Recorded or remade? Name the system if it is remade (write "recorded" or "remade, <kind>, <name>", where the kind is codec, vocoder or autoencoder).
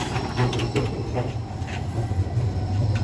remade, vocoder, BigVGAN v2